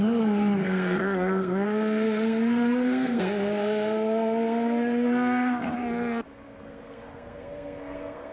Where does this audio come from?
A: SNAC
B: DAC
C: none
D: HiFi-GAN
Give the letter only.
A